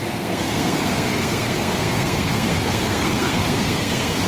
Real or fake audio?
fake